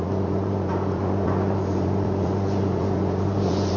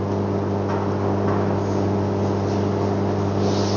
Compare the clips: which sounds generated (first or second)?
first